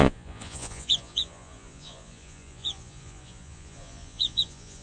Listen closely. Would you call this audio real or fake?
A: fake